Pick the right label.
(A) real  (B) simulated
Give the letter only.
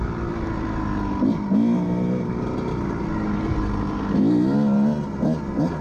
A